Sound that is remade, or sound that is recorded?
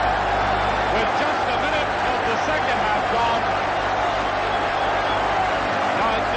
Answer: recorded